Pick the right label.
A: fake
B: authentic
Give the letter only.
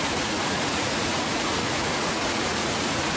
A